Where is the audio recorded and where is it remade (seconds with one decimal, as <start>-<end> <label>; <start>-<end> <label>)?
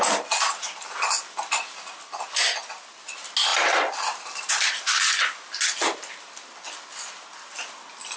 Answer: 0.0-8.2 recorded